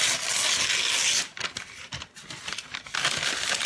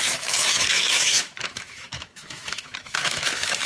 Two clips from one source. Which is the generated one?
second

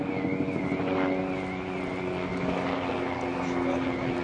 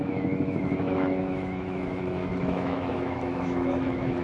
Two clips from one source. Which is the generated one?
second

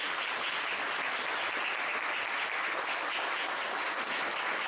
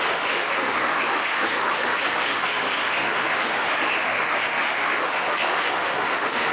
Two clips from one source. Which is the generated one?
second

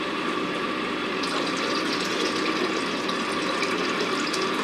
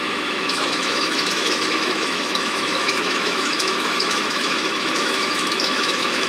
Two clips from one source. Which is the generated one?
second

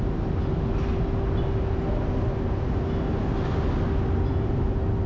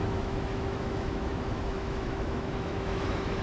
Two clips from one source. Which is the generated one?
second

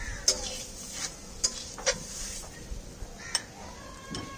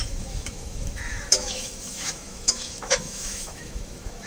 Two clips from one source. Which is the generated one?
second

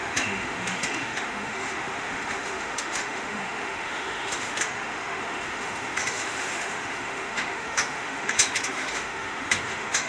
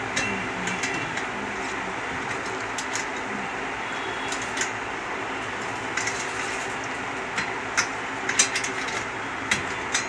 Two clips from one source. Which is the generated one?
first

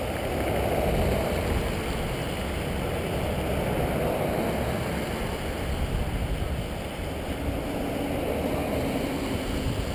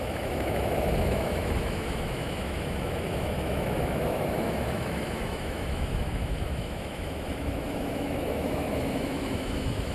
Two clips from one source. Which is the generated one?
second